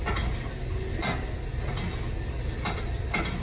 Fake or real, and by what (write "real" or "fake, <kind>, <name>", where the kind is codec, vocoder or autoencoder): real